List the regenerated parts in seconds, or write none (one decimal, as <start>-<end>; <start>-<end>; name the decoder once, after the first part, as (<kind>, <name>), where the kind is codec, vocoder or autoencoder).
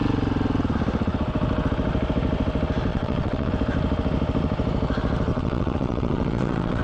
2.9-3.5 (vocoder, WaveNeXt); 5.3-6.8